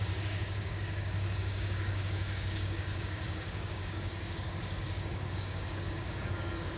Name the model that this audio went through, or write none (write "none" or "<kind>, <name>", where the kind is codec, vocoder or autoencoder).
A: codec, DAC